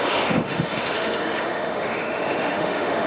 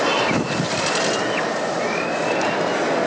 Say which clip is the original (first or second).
second